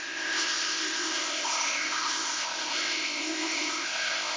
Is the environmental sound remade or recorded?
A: remade